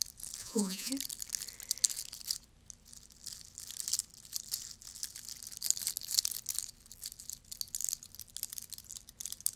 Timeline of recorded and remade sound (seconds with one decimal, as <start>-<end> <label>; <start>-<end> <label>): 0.0-0.4 recorded; 0.4-0.9 remade; 0.9-9.6 recorded

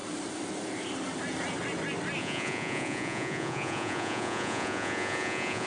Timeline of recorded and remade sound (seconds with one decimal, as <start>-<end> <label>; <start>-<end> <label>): 0.0-2.2 recorded; 2.2-5.7 remade

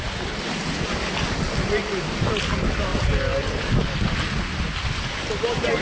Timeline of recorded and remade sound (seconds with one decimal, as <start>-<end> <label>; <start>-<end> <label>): 0.0-5.8 recorded

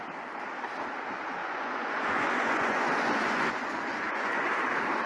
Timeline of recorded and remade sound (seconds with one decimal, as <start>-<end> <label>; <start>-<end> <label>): 0.0-1.4 recorded; 1.4-4.5 remade; 4.5-5.1 recorded